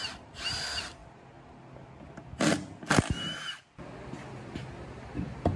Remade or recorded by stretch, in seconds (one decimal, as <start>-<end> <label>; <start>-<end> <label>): 0.0-5.6 recorded